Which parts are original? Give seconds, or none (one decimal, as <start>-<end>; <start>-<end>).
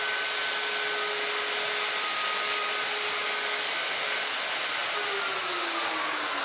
0.0-6.4